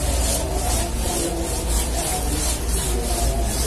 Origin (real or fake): real